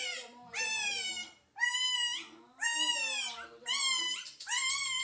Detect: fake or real real